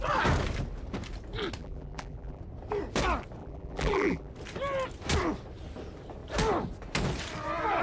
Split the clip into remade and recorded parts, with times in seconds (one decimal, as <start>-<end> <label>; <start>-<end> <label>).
0.0-1.6 recorded; 1.6-2.4 remade; 2.4-3.4 recorded; 3.4-4.3 remade; 4.3-7.8 recorded